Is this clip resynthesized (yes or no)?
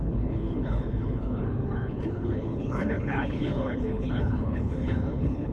yes